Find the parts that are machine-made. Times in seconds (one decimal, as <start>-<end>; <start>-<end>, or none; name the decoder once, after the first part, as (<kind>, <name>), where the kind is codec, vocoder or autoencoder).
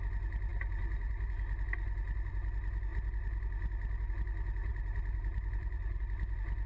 4.7-6.0 (vocoder, BigVGAN v2)